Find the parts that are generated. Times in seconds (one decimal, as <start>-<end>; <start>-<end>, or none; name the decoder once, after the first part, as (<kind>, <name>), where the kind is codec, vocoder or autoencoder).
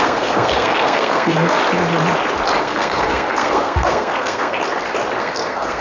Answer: 0.0-1.6 (codec, SNAC); 2.6-4.6; 5.2-5.8